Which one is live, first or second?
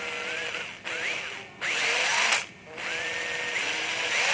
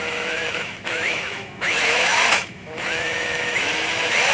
first